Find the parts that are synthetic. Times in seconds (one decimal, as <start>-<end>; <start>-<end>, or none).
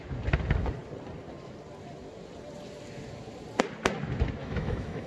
4.4-5.1